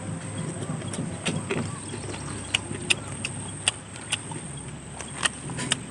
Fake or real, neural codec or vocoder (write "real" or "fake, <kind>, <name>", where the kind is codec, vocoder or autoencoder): fake, vocoder, BigVGAN v2